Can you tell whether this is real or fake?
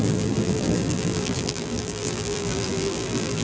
fake